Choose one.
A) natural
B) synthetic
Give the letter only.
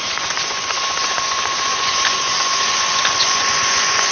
B